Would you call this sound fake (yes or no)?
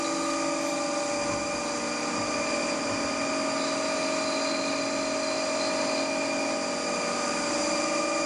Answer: no